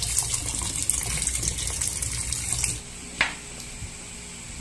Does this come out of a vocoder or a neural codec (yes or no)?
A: no